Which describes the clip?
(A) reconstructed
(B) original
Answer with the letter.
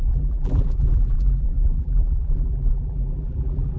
A